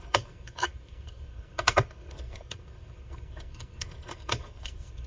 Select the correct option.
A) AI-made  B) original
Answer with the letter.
A